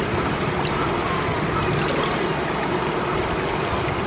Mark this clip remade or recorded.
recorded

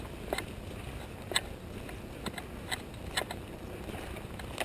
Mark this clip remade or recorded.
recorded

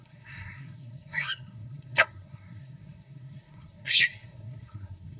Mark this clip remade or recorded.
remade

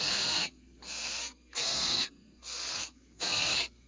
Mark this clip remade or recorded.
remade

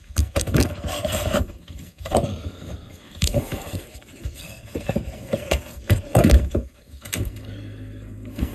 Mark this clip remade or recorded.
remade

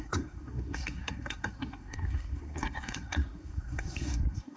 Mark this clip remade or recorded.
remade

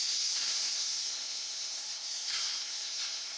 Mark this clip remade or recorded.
remade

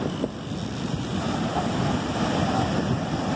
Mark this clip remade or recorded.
recorded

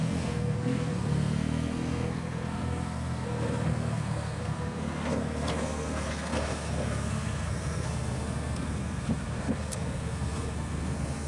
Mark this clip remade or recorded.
remade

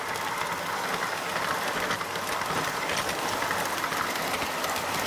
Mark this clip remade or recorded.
recorded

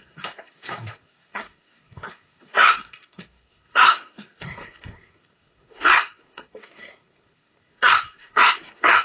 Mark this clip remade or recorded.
remade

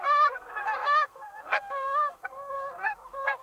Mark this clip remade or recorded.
remade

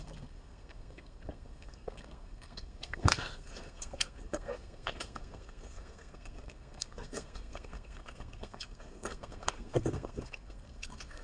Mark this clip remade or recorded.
remade